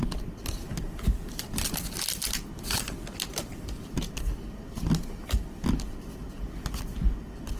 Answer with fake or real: real